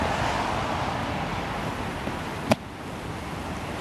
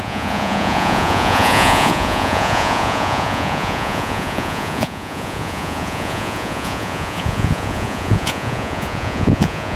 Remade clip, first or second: second